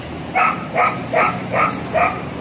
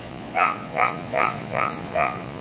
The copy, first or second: second